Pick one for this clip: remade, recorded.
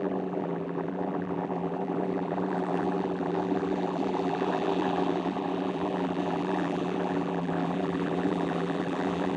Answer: remade